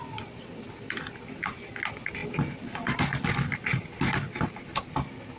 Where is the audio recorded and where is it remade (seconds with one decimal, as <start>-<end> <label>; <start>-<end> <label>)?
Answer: 0.0-5.4 recorded